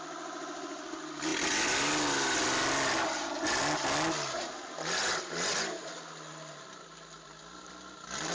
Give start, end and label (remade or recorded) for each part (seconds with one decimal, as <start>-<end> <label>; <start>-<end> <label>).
0.0-8.3 recorded